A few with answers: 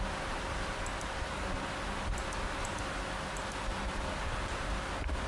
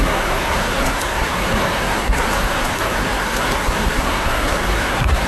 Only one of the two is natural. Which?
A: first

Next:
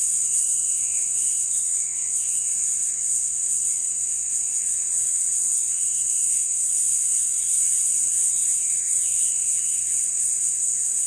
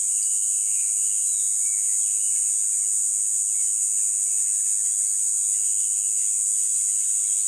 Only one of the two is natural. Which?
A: second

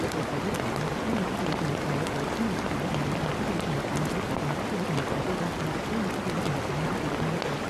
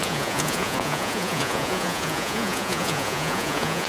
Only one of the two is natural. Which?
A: first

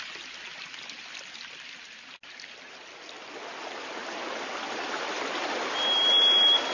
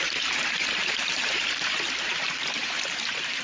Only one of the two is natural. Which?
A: first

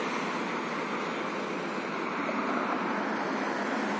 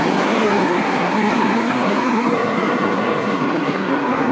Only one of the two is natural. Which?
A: first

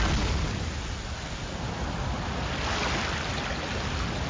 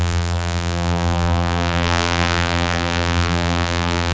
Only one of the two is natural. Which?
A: first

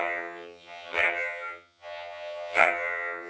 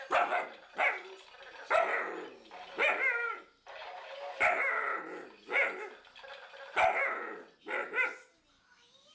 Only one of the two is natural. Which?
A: second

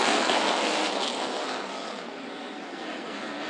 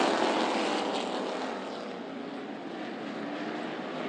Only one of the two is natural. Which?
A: second